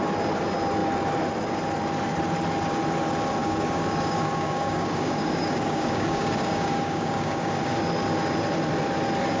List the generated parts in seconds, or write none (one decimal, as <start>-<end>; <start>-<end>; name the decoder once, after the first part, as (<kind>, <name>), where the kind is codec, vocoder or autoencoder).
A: 3.4-7.6 (codec, DAC)

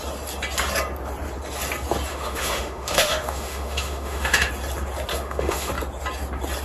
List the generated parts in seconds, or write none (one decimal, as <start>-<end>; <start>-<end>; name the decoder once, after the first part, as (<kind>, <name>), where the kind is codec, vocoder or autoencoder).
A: 2.1-4.5 (autoencoder, DAC-VAE); 5.1-5.7

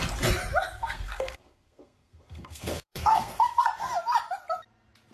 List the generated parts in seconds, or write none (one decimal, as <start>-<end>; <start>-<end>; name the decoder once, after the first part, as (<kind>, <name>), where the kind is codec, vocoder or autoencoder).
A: 0.8-3.9 (codec, SNAC)

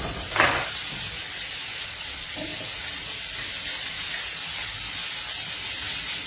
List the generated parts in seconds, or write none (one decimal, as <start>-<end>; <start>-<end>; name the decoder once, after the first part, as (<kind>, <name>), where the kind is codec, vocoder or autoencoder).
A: 0.0-2.5 (vocoder, BigVGAN v2); 3.2-5.0; 5.8-6.3

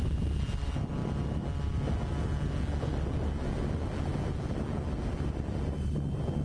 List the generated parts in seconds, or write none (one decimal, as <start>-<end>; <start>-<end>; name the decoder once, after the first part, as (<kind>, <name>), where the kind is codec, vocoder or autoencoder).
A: none

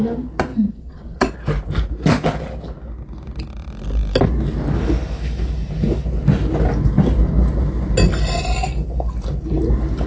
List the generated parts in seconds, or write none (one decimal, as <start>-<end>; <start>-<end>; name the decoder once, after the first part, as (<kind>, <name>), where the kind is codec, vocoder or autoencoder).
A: 0.5-1.3 (vocoder, WaveNeXt)

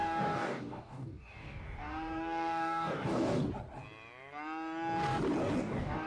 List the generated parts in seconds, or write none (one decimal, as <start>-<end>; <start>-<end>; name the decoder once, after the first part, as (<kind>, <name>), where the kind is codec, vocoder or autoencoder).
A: 0.0-3.4 (codec, DAC); 5.6-6.1